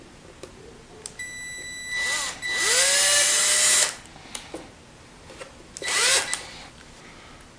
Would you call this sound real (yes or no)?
yes